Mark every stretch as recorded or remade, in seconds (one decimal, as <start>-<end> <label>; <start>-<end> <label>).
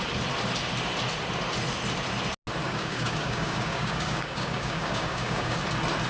0.0-2.6 recorded; 2.6-5.6 remade; 5.6-6.1 recorded